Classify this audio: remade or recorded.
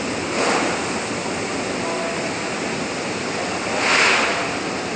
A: recorded